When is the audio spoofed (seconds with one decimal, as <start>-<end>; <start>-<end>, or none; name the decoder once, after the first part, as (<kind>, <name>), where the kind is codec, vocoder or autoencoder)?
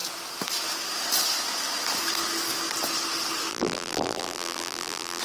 3.5-5.2 (vocoder, BigVGAN v2)